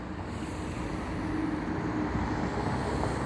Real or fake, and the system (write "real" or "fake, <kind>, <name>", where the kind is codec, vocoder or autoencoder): real